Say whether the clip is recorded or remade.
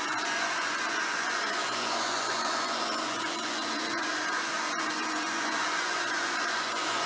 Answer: remade